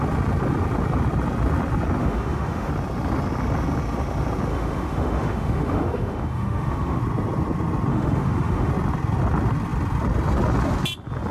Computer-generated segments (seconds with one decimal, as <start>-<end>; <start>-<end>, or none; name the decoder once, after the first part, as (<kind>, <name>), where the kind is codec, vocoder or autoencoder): 2.0-2.7 (autoencoder, DAC-VAE); 4.5-7.0; 7.9-8.7